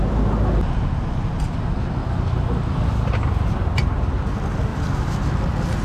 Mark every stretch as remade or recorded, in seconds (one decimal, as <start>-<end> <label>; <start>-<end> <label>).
0.0-4.7 recorded; 4.7-5.2 remade; 5.2-5.8 recorded